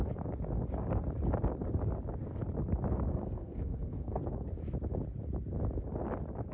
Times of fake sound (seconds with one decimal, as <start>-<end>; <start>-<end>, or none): 3.1-4.2